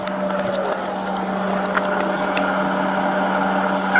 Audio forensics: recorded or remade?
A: recorded